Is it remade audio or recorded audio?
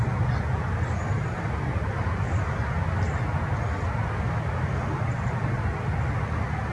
recorded